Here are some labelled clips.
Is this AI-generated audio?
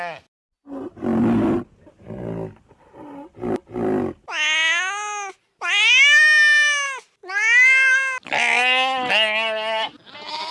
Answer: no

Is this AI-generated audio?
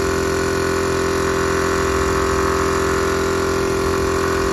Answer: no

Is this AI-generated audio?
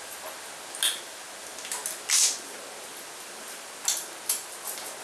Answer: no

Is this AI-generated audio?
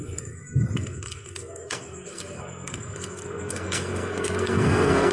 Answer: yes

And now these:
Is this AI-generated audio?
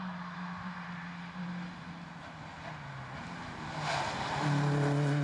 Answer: no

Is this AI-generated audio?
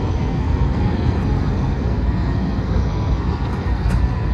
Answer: yes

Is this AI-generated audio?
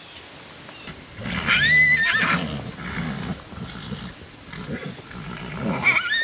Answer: no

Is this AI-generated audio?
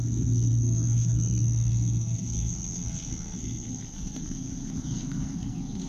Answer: yes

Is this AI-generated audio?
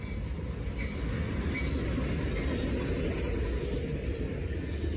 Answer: no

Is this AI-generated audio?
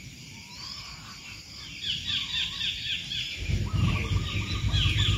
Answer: yes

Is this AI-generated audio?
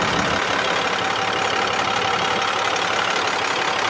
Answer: no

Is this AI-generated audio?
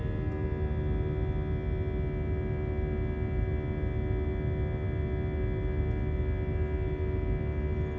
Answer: no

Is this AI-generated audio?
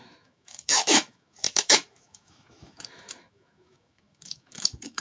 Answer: yes